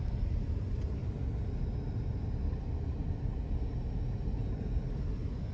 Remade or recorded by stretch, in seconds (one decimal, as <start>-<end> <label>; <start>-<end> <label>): 0.0-5.5 recorded